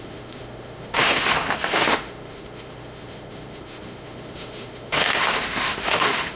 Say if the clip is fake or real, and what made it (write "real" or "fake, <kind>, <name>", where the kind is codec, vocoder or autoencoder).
fake, autoencoder, DAC-VAE